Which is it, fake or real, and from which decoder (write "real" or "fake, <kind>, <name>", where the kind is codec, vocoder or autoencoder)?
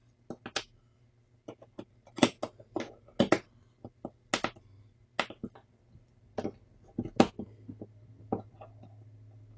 real